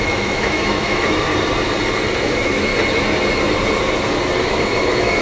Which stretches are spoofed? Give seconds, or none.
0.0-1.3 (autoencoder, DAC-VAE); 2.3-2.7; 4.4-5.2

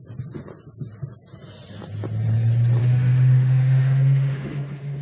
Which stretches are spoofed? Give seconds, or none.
2.8-5.0 (autoencoder, DAC-VAE)

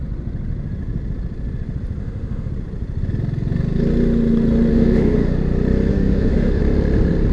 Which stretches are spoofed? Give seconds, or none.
2.0-2.5 (autoencoder, DAC-VAE); 4.7-5.4; 5.9-6.6

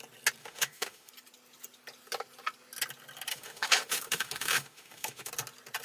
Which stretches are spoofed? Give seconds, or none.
0.4-1.1 (autoencoder, DAC-VAE); 3.3-5.3

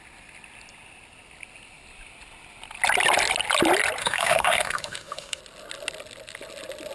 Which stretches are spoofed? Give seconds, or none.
4.0-5.4 (autoencoder, DAC-VAE)

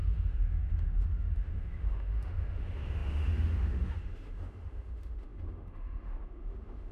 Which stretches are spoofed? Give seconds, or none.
0.0-6.9 (autoencoder, DAC-VAE)